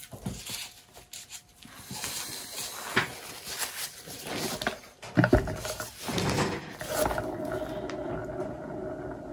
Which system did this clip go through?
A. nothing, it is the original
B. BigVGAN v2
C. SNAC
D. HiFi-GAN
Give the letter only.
A